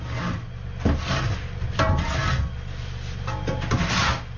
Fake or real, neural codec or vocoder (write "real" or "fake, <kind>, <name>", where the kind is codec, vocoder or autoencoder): real